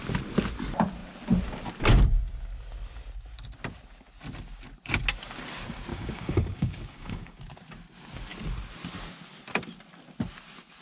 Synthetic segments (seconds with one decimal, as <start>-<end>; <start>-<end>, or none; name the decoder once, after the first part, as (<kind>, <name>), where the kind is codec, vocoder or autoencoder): 5.9-7.4 (codec, DAC)